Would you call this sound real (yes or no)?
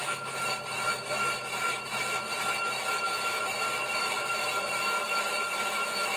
no